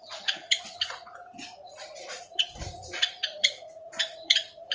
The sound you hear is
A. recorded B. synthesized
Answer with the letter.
B